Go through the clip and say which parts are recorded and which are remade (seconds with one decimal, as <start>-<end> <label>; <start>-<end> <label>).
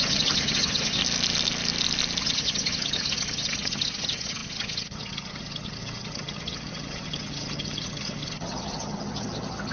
0.0-1.0 remade; 1.0-2.2 recorded; 2.2-9.7 remade